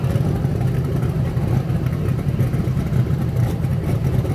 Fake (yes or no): no